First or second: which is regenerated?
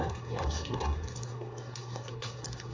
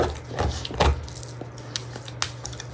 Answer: first